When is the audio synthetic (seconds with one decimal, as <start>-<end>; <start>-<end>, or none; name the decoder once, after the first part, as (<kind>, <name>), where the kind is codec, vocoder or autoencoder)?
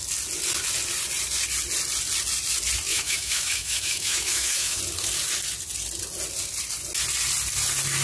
2.9-4.8 (autoencoder, DAC-VAE)